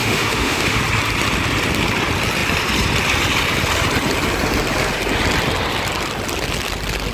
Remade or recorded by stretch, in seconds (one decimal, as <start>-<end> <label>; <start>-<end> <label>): 0.0-0.8 remade; 0.8-7.1 recorded